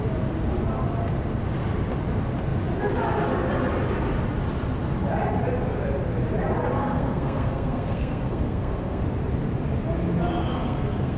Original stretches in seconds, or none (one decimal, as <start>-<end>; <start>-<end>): 0.0-6.8; 9.0-10.5